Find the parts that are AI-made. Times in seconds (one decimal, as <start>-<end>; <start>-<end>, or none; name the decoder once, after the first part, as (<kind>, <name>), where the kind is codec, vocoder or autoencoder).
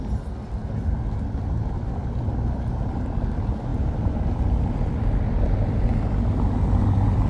none